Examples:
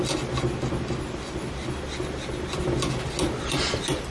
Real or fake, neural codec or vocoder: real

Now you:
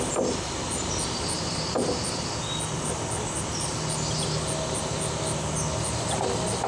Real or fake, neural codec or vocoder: real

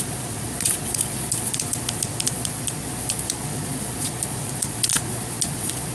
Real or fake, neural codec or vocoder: fake, vocoder, Vocos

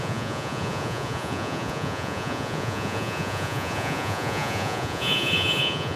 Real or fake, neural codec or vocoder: fake, vocoder, Vocos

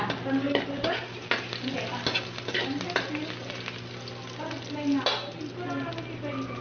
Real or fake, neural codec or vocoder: real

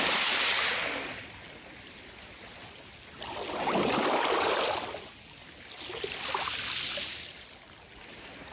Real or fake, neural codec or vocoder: real